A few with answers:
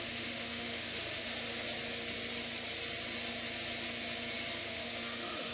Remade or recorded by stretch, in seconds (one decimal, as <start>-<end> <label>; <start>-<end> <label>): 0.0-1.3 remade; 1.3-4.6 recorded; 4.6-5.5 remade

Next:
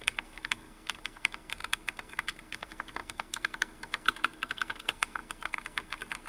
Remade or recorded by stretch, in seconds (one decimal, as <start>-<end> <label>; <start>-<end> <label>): 0.0-6.3 remade

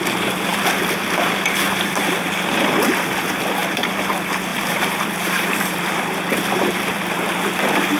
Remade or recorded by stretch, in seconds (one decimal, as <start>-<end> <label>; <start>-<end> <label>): 0.0-4.5 recorded; 4.5-6.0 remade; 6.0-8.0 recorded

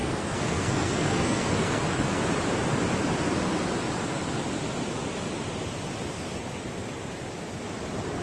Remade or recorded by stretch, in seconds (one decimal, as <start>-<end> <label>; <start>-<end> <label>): 0.0-2.2 remade; 2.2-8.2 recorded

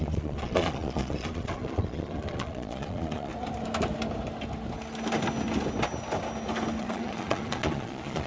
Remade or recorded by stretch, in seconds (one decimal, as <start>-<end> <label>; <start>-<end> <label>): 0.0-3.3 remade; 3.3-6.8 recorded; 6.8-8.3 remade

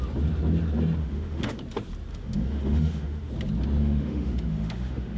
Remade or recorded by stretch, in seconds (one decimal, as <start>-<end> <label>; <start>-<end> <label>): 0.0-1.0 recorded; 1.0-1.6 remade; 1.6-2.1 recorded; 2.1-3.3 remade; 3.3-3.8 recorded; 3.8-5.2 remade

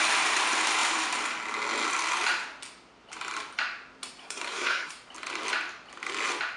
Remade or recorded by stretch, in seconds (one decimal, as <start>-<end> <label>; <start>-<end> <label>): 0.0-4.2 recorded; 4.2-4.9 remade; 4.9-6.6 recorded

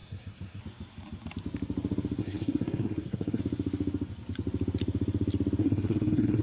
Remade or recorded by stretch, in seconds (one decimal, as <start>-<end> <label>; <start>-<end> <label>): 0.0-0.6 remade; 0.6-2.2 recorded; 2.2-3.4 remade; 3.4-5.6 recorded; 5.6-6.4 remade